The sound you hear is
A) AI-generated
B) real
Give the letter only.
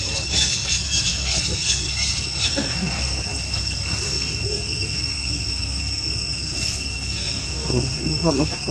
A